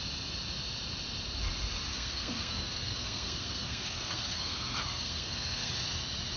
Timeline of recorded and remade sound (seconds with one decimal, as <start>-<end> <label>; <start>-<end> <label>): 0.0-1.9 recorded; 1.9-5.7 remade; 5.7-6.4 recorded